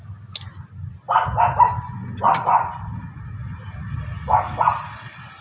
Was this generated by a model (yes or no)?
no